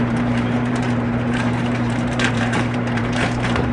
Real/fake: fake